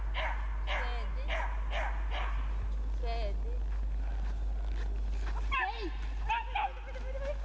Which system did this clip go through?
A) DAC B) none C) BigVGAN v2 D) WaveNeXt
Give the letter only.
B